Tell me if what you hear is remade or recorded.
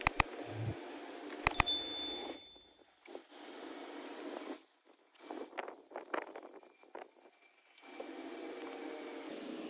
recorded